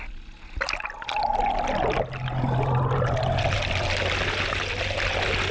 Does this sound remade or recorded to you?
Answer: recorded